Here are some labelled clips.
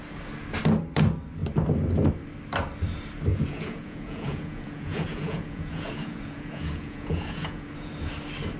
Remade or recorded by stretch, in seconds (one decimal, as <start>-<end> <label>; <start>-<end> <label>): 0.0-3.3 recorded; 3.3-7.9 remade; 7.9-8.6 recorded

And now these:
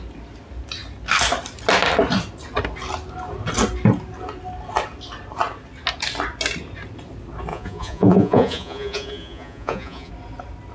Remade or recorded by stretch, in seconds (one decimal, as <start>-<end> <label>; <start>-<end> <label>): 0.0-7.5 recorded; 7.5-10.1 remade; 10.1-10.7 recorded

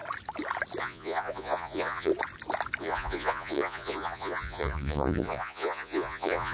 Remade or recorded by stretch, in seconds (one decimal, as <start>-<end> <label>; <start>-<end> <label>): 0.0-0.8 recorded; 0.8-2.1 remade; 2.1-2.8 recorded; 2.8-6.5 remade

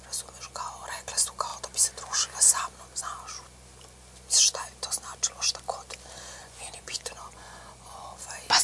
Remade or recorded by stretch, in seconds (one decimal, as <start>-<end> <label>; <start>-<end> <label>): 0.0-6.4 recorded; 6.4-8.1 remade; 8.1-8.6 recorded